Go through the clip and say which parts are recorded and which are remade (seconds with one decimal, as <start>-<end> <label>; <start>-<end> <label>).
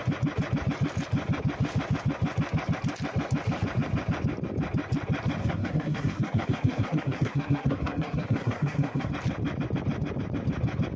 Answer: 0.0-5.4 recorded; 5.4-9.1 remade; 9.1-11.0 recorded